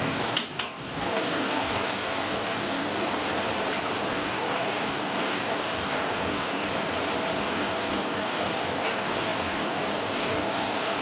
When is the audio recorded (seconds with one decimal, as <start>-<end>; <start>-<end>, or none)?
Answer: 3.1-4.1; 6.7-7.4